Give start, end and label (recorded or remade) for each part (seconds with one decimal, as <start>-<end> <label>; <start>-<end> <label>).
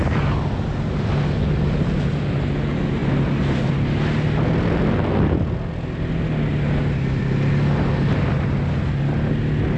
0.0-9.8 recorded